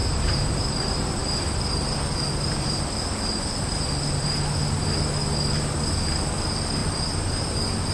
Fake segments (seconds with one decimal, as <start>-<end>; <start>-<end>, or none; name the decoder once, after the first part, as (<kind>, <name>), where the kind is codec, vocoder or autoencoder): 0.0-0.5 (vocoder, BigVGAN v2)